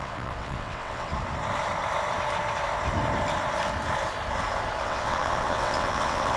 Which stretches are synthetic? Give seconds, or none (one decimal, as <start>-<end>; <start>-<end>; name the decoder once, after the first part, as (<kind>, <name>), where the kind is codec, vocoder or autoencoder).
0.0-1.1 (vocoder, WaveNeXt); 4.8-6.4